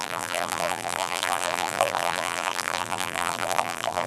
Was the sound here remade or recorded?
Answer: remade